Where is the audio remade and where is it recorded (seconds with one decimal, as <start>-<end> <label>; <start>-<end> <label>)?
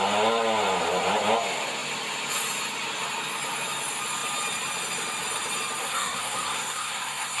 0.0-5.8 recorded; 5.8-7.4 remade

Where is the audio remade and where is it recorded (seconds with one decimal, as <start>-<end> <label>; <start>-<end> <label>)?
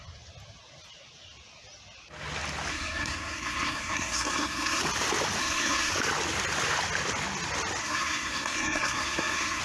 0.0-2.7 recorded; 2.7-4.8 remade; 4.8-5.4 recorded; 5.4-5.9 remade; 5.9-7.8 recorded; 7.8-9.6 remade